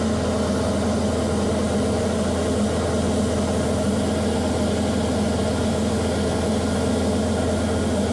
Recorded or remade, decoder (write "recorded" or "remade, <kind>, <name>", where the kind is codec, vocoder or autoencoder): recorded